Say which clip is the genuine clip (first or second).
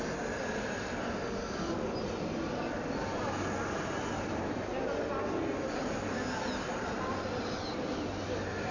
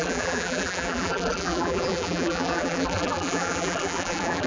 first